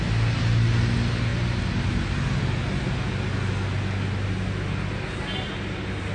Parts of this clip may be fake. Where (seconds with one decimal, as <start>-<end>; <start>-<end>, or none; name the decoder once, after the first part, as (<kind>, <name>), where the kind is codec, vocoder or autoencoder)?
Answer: none